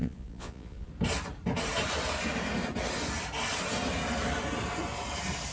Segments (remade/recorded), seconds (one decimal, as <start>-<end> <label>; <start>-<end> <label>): 0.0-0.9 remade; 0.9-5.5 recorded